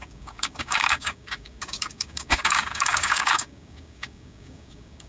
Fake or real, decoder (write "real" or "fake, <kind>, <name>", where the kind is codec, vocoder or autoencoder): fake, codec, DAC